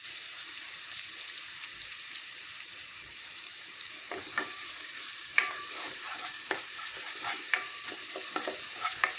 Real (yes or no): no